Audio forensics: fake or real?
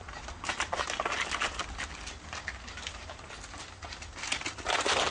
real